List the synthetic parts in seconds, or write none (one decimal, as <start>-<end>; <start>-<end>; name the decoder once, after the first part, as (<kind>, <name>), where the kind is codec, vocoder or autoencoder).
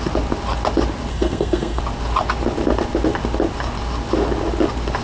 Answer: 1.1-1.8 (codec, SNAC)